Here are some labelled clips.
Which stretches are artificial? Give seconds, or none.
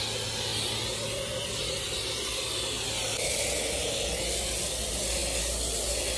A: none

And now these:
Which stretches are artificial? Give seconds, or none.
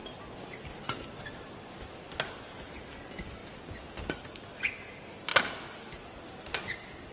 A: none